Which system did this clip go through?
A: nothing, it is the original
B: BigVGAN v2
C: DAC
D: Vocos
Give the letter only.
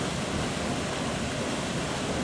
A